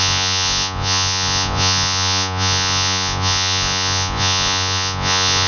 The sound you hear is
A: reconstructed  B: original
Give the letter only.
A